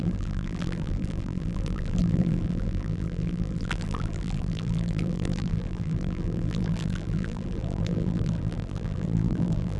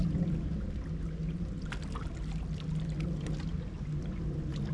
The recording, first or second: second